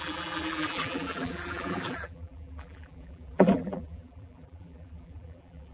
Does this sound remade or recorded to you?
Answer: remade